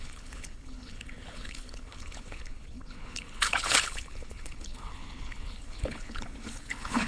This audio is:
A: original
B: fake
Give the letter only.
B